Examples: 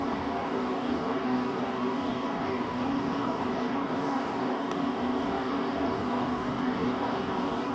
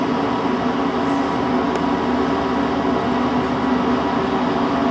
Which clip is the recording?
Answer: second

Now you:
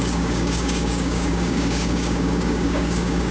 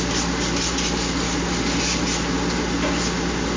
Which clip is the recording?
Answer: second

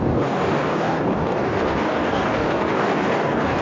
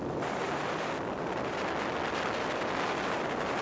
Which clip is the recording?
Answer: second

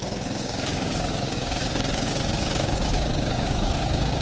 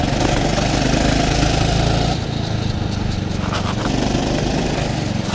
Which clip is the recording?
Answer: second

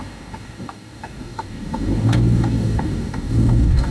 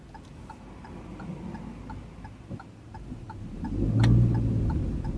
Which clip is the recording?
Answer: second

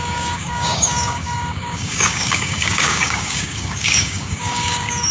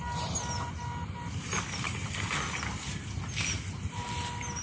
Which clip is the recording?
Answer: second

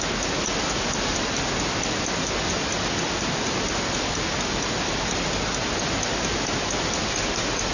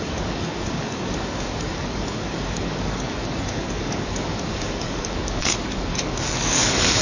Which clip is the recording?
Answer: first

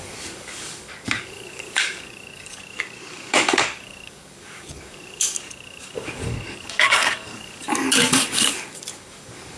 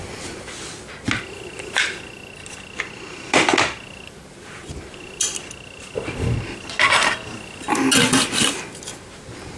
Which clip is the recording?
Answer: second